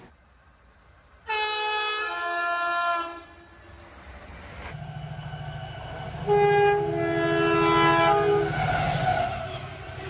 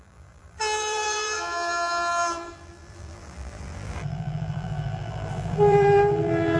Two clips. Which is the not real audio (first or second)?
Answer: second